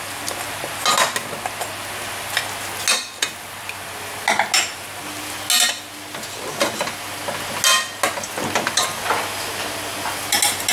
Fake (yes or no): no